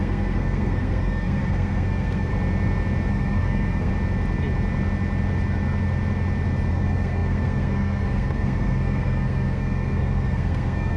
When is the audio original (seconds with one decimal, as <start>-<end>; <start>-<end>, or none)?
2.3-3.1; 3.9-6.7